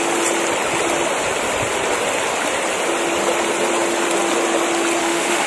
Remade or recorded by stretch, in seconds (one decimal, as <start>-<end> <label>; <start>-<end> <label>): 0.0-5.0 recorded; 5.0-5.5 remade